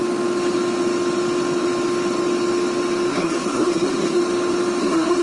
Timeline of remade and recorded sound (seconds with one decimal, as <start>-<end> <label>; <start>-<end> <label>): 0.0-3.1 recorded; 3.1-4.2 remade; 4.2-4.8 recorded; 4.8-5.2 remade